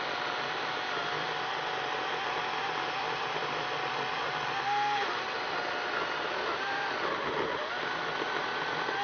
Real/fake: fake